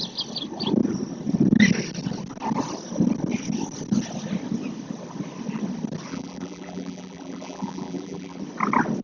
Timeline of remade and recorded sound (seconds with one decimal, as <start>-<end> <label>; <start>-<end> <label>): 0.0-6.1 recorded; 6.1-8.4 remade; 8.4-9.0 recorded